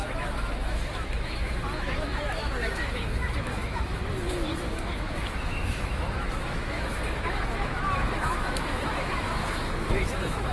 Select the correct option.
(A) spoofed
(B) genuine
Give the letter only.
A